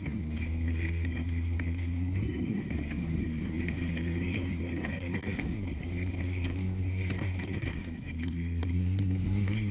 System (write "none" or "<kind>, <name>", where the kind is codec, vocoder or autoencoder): codec, SNAC